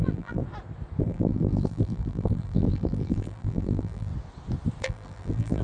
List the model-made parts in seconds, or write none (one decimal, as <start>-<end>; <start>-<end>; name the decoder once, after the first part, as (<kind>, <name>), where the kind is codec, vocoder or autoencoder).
0.0-0.4 (vocoder, BigVGAN v2); 1.0-4.1; 4.8-5.6